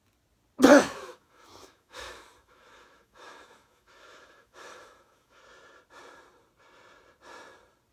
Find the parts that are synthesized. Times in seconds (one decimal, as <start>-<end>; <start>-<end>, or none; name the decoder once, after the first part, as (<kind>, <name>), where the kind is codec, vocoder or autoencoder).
0.7-5.4 (autoencoder, DAC-VAE)